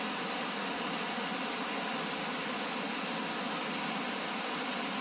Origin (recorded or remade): recorded